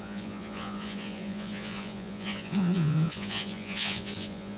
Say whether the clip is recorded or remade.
remade